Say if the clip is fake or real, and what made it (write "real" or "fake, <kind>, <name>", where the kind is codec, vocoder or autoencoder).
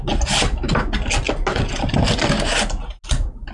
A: real